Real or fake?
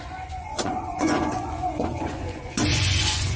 fake